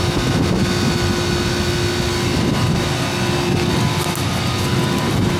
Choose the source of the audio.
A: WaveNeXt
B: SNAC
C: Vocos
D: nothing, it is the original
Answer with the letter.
D